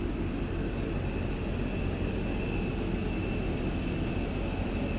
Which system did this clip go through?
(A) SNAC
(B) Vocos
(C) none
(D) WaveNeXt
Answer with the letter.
C